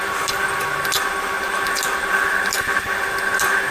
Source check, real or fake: real